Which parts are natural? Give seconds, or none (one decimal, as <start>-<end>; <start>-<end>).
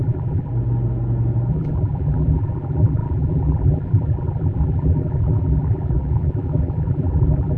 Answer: 0.5-1.5